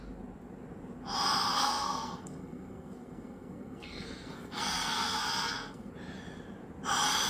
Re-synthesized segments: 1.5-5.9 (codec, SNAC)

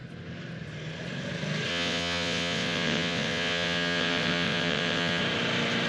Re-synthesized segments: 1.7-5.2 (vocoder, WaveNeXt)

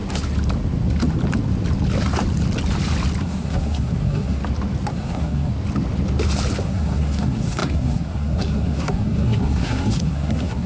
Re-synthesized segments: 3.2-4.4 (codec, SNAC); 4.9-5.5; 6.6-10.7

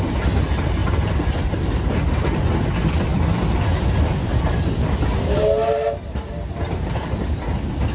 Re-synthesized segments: none

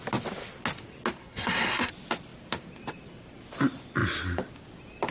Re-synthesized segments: 1.2-1.9 (codec, SNAC)

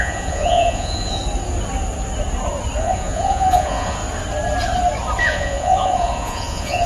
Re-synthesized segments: 0.0-1.2 (vocoder, Vocos); 2.8-4.0; 5.2-6.9

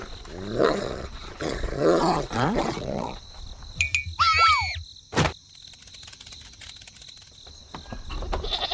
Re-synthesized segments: 0.6-3.2 (vocoder, Vocos)

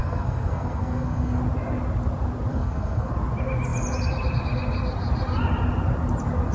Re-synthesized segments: 0.0-1.4 (codec, SNAC); 2.5-3.1